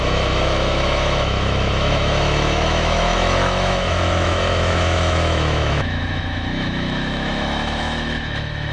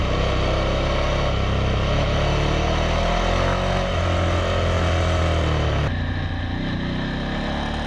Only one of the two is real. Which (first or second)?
second